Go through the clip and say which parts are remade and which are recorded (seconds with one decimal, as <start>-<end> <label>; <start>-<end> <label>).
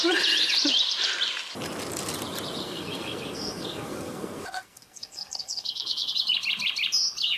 0.0-2.6 recorded; 2.6-6.1 remade; 6.1-7.4 recorded